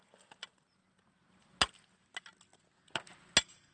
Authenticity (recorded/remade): recorded